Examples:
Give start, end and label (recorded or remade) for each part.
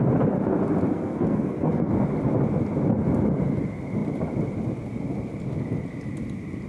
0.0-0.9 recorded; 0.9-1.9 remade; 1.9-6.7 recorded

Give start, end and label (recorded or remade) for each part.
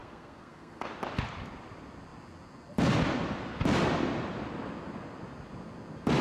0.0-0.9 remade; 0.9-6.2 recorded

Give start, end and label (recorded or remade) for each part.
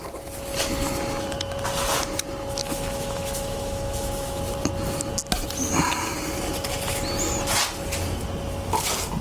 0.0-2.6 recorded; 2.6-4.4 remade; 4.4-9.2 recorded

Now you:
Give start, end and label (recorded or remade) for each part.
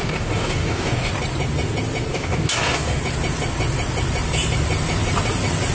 0.0-1.1 remade; 1.1-2.1 recorded; 2.1-3.0 remade; 3.0-5.7 recorded